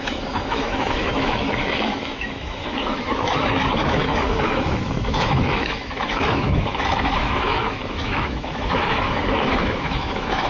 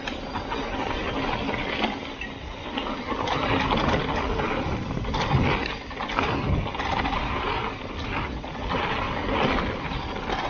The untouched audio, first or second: second